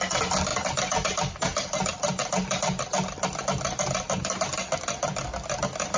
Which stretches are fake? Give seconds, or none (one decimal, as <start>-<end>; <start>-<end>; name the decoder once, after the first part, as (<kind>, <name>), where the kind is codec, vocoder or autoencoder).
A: none